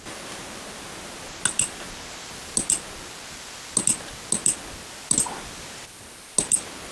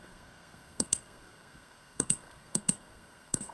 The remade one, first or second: second